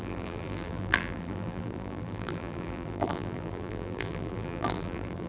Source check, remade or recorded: remade